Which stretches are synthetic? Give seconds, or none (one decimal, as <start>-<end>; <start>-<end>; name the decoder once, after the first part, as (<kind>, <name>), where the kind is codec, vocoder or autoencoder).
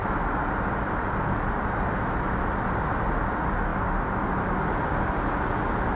none